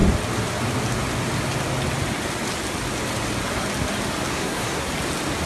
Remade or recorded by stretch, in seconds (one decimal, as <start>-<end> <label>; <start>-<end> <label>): 0.0-4.3 recorded; 4.3-4.9 remade; 4.9-5.5 recorded